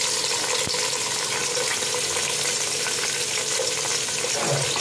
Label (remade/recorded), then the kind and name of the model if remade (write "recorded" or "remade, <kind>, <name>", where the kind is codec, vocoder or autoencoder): recorded